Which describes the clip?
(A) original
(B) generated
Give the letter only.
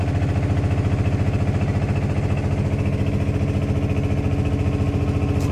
A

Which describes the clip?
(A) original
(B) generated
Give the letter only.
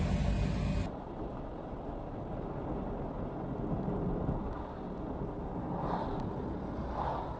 A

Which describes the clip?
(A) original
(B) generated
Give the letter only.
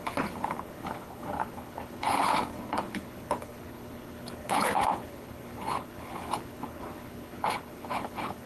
B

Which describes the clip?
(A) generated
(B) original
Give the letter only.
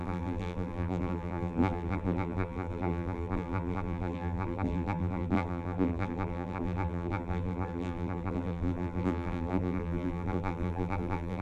A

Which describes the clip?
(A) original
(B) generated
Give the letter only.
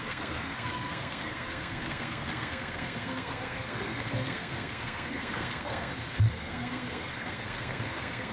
B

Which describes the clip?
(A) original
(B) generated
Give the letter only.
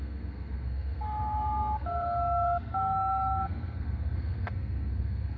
B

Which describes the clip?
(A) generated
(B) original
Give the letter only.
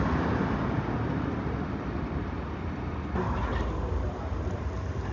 B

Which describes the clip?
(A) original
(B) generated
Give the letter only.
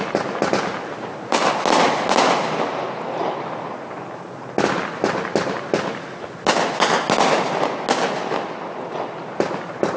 A